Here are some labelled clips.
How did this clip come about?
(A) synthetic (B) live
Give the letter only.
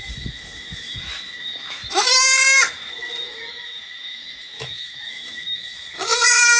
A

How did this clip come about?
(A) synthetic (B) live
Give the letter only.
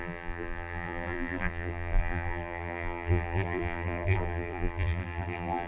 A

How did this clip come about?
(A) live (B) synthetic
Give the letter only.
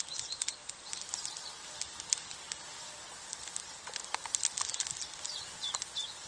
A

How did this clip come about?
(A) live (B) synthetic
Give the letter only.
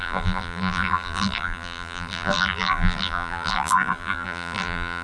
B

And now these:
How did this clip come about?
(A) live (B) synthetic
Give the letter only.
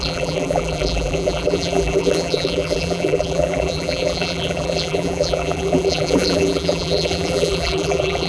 B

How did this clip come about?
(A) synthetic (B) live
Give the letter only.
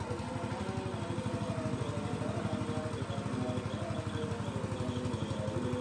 B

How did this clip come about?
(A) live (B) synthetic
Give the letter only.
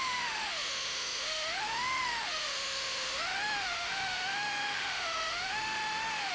B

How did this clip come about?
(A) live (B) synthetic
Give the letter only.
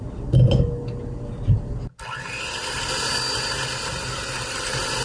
A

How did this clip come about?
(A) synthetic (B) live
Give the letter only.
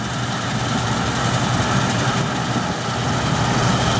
B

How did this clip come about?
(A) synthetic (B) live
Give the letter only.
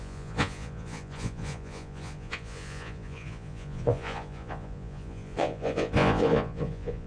A